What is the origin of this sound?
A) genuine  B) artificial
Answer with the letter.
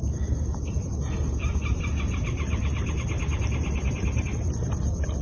A